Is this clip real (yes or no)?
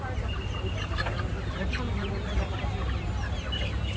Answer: yes